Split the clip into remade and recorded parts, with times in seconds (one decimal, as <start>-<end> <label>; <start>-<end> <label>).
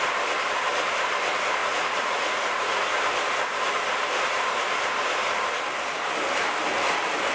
0.0-1.6 recorded; 1.6-3.0 remade; 3.0-7.3 recorded